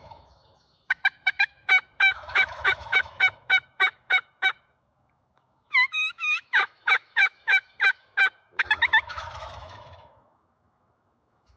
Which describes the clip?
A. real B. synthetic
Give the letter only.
B